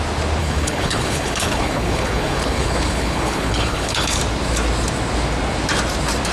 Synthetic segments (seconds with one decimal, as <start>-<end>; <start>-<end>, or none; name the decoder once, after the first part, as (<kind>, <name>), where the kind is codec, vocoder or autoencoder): 0.4-4.2 (codec, HILCodec)